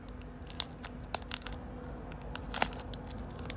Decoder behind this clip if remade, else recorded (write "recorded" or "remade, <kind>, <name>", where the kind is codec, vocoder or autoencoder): recorded